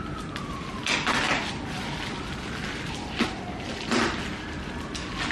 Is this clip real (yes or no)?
yes